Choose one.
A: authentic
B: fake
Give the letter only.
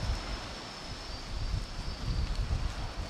A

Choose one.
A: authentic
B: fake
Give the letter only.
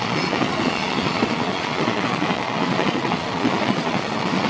B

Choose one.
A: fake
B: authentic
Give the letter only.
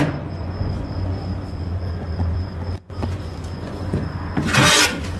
A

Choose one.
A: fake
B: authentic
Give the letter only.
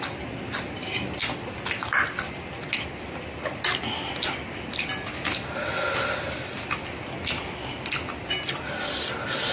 B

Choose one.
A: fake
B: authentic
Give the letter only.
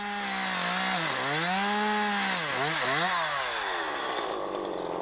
B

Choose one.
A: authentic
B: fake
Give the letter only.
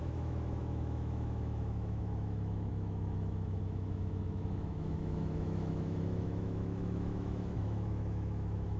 B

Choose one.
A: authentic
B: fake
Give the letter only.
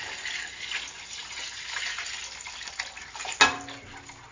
A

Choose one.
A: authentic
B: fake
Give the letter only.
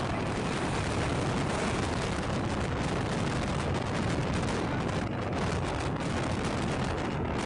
A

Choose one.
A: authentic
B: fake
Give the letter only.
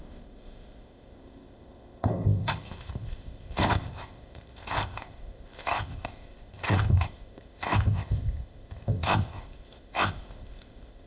B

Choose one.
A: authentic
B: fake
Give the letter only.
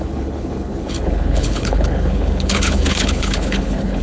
B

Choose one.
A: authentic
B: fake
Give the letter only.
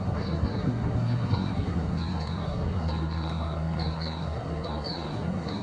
B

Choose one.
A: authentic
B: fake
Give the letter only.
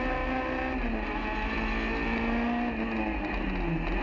A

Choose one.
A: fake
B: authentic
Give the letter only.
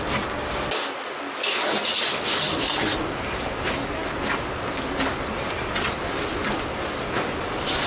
B